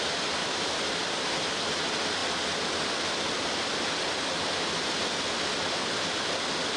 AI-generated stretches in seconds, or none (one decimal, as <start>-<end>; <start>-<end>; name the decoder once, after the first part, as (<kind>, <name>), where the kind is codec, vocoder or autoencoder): none